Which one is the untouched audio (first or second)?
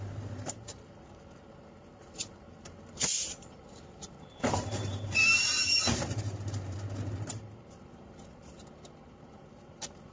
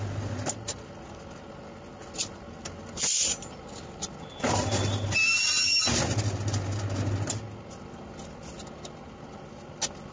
second